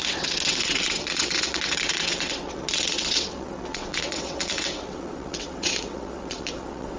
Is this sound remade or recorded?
remade